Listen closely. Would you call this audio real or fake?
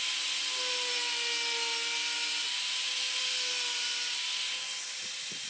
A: real